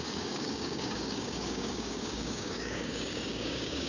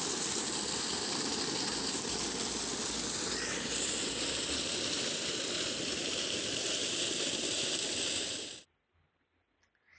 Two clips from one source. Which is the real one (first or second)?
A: second